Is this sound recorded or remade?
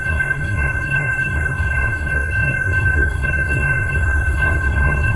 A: remade